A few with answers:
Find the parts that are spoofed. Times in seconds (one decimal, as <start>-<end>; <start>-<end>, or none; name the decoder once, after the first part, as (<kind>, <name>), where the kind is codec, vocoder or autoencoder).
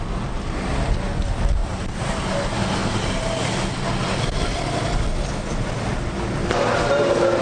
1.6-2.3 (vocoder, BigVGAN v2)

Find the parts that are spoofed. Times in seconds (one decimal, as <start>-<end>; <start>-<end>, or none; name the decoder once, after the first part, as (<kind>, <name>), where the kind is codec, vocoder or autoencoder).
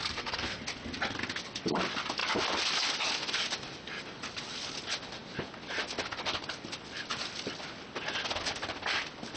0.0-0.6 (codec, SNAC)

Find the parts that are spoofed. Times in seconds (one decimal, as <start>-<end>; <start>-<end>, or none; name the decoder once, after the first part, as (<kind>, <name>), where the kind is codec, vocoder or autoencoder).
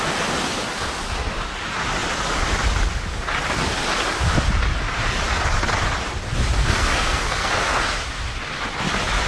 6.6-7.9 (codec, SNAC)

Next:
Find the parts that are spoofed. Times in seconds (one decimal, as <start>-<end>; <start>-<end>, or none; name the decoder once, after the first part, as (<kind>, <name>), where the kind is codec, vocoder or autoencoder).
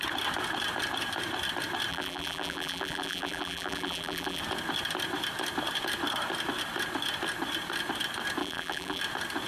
1.9-4.4 (vocoder, BigVGAN v2); 8.4-9.0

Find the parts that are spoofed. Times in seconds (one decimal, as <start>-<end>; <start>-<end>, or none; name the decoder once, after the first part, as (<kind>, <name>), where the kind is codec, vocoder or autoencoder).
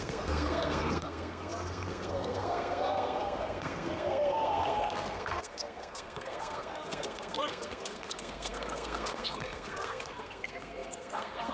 0.0-11.5 (codec, SNAC)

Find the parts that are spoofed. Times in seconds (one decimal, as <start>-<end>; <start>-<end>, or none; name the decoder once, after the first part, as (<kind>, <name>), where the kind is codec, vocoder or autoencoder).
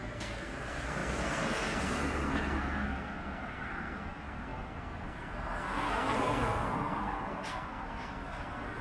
0.0-8.8 (codec, SNAC)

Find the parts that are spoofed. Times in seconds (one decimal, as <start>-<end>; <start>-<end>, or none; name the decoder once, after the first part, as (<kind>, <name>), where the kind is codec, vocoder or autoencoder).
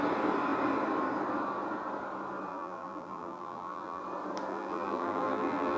2.5-4.0 (vocoder, BigVGAN v2); 4.5-5.8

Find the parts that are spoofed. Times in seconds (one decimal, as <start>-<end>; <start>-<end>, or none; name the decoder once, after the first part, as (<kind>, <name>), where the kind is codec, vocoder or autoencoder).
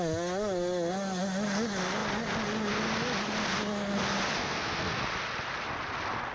4.4-5.0 (codec, SNAC)